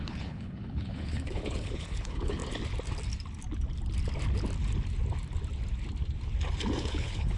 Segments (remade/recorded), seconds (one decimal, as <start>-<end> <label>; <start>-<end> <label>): 0.0-2.4 remade; 2.4-6.8 recorded; 6.8-7.4 remade